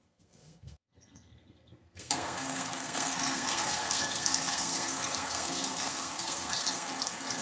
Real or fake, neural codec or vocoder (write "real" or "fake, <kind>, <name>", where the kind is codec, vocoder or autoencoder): fake, codec, SNAC